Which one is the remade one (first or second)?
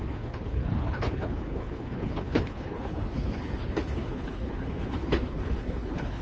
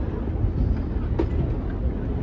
first